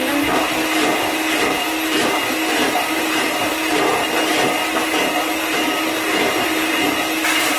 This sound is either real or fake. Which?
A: real